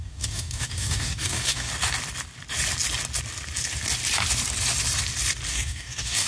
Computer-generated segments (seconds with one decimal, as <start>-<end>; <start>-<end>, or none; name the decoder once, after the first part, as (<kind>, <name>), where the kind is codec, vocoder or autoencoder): 0.0-1.7 (codec, DAC); 5.5-6.3